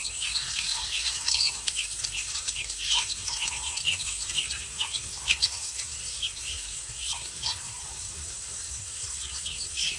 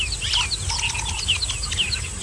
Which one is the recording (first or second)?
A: second